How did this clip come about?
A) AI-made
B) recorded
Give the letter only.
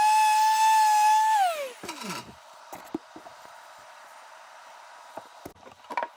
B